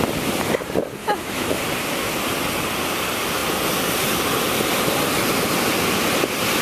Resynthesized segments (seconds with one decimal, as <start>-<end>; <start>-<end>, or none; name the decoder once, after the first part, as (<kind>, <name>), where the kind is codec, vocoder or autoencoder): 1.0-1.6 (autoencoder, DAC-VAE)